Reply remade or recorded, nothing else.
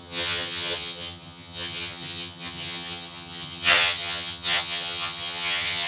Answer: remade